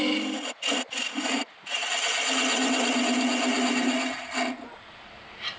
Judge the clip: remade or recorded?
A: recorded